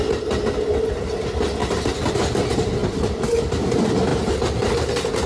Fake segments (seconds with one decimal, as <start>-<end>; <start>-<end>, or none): 1.6-2.1; 2.8-3.4; 4.1-5.3